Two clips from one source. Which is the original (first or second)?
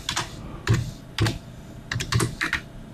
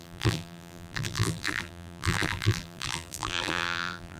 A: first